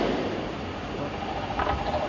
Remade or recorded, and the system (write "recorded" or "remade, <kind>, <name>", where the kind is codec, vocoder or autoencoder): recorded